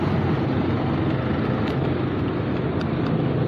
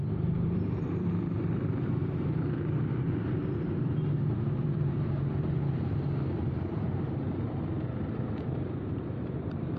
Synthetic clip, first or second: second